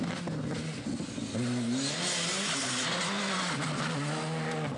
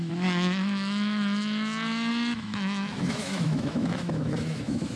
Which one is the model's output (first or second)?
second